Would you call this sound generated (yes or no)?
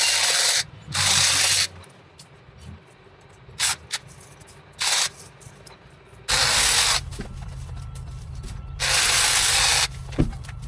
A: no